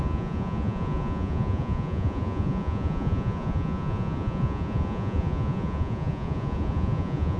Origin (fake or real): fake